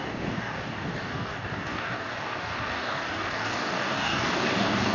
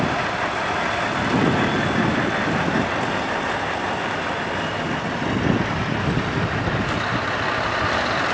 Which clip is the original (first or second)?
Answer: second